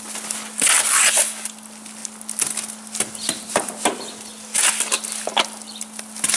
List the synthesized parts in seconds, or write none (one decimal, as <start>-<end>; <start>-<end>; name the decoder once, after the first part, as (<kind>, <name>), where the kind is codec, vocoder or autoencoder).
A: none